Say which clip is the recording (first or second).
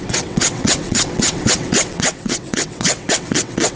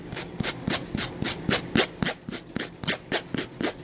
second